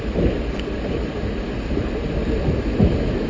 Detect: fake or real real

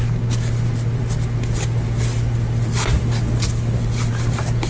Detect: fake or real real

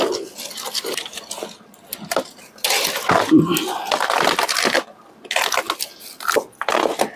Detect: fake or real real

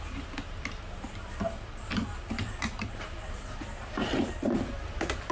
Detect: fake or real real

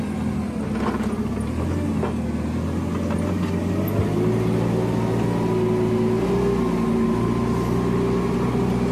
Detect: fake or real real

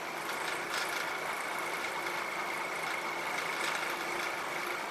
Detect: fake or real real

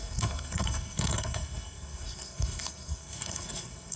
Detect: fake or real fake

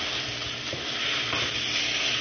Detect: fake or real real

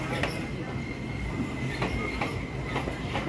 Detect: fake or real real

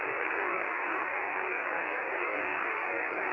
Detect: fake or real fake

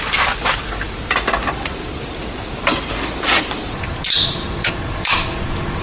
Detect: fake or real fake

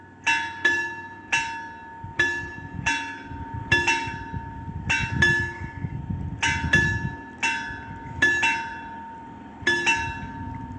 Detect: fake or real real